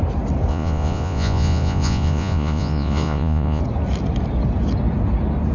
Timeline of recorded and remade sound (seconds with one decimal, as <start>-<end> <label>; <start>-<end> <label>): 0.0-0.5 recorded; 0.5-3.6 remade; 3.6-5.5 recorded

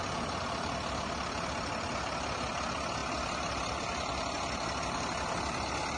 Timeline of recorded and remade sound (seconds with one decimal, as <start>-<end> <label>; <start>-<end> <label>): 0.0-6.0 recorded